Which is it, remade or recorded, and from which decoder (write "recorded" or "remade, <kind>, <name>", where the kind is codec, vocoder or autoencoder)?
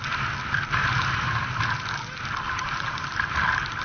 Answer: recorded